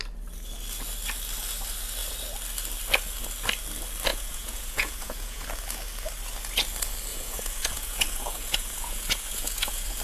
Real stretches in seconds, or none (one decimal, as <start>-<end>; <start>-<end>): 0.0-4.1; 5.5-7.1